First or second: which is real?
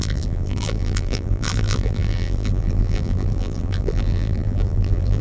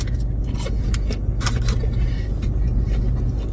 second